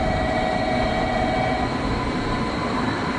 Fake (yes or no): no